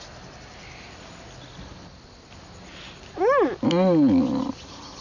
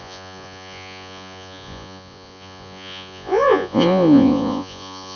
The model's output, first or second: second